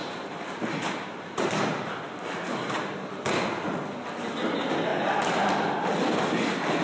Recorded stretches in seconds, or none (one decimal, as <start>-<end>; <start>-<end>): 2.0-2.5; 3.1-6.8